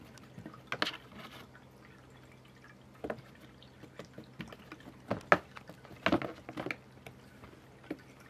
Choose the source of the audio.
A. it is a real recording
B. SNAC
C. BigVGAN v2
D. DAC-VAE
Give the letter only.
A